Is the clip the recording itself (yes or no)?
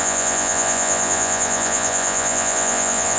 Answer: no